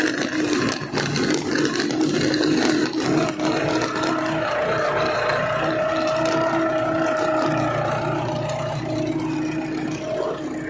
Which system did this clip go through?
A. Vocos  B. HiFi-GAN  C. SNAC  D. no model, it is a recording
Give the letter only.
D